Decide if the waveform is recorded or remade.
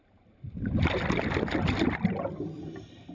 recorded